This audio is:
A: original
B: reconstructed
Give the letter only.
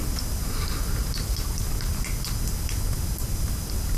A